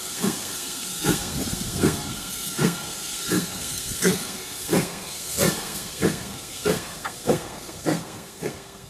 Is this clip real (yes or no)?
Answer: no